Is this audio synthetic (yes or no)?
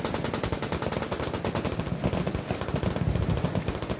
no